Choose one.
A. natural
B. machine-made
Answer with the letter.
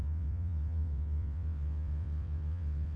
B